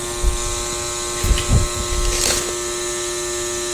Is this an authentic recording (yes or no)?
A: yes